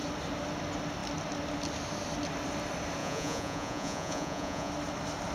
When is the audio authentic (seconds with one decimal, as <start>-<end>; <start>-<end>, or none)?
0.0-3.0; 4.7-5.3